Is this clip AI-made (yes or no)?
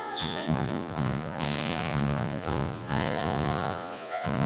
yes